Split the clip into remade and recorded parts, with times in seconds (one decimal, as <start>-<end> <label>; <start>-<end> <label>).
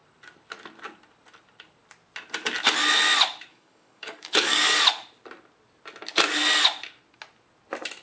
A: 0.0-3.5 recorded; 3.5-4.8 remade; 4.8-8.0 recorded